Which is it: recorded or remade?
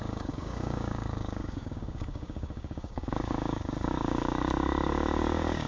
remade